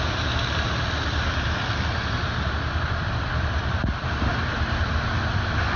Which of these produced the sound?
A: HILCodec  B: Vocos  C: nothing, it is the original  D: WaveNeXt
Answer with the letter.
C